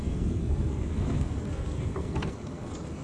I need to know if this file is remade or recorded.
remade